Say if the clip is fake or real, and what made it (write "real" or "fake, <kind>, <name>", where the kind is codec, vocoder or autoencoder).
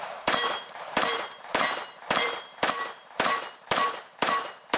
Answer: fake, vocoder, BigVGAN v2